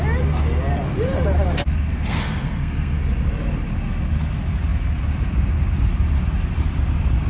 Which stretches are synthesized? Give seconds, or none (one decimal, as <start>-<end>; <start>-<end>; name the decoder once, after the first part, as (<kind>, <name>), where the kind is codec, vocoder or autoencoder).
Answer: 1.9-3.0 (codec, SNAC)